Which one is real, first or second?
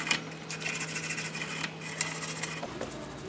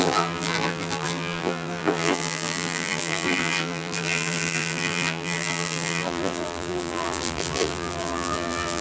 first